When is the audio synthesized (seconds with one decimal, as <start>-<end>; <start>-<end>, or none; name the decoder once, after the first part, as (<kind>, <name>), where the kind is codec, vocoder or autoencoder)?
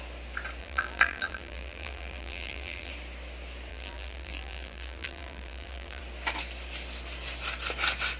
0.6-2.9 (vocoder, BigVGAN v2); 3.7-6.0